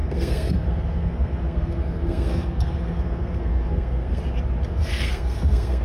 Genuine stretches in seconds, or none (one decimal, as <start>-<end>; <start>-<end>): 4.2-4.7